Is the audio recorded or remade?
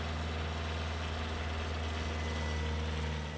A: recorded